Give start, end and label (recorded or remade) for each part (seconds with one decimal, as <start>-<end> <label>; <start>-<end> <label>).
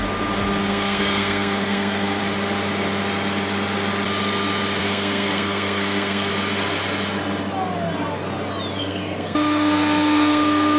0.0-0.6 recorded; 0.6-2.2 remade; 2.2-4.8 recorded; 4.8-6.3 remade; 6.3-8.8 recorded; 8.8-10.8 remade